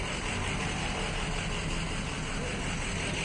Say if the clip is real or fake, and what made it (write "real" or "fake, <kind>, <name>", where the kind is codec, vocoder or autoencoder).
real